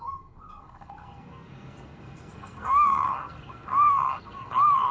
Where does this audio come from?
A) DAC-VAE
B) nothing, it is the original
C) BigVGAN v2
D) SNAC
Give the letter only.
D